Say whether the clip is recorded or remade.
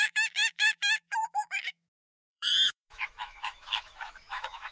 remade